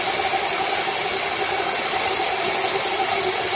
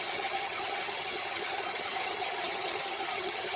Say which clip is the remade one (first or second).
second